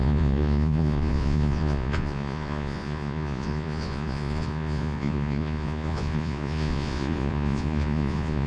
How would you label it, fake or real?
fake